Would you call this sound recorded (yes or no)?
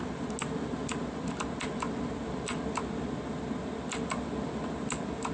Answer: yes